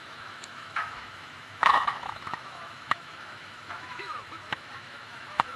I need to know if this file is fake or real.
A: fake